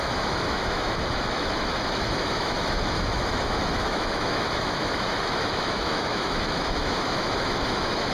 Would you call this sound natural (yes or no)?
no